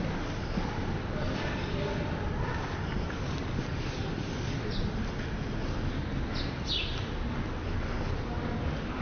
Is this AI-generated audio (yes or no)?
no